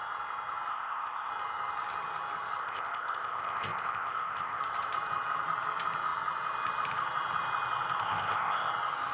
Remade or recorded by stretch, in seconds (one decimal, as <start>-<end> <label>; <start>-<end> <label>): 0.0-0.7 recorded; 0.7-1.3 remade; 1.3-2.6 recorded; 2.6-4.6 remade; 4.6-8.0 recorded; 8.0-8.7 remade; 8.7-9.1 recorded